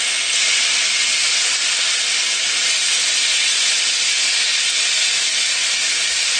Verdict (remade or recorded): recorded